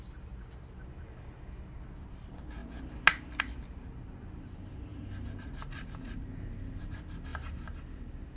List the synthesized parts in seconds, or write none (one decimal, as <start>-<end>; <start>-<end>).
none

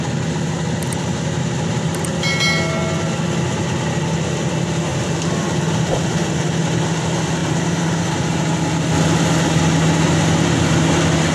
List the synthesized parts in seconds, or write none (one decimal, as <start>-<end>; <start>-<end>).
4.9-6.4; 7.4-8.4

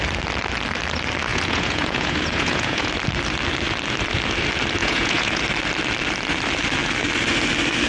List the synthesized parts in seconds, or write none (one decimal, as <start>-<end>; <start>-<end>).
1.3-2.9; 4.8-5.4

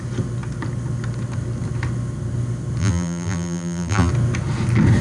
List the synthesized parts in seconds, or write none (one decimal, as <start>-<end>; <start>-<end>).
2.8-4.1

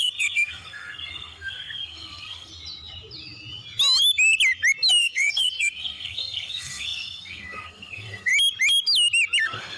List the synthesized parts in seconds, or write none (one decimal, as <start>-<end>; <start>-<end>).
0.0-2.5; 5.0-8.3; 9.4-9.8